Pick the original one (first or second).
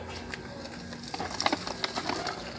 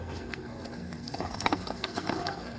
first